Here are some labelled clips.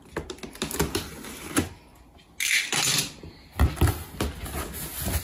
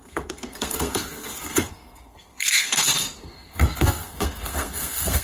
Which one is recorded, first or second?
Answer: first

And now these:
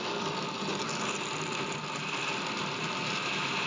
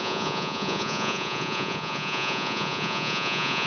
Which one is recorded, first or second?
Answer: first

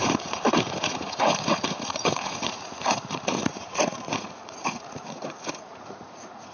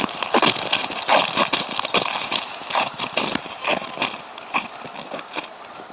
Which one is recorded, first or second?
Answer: second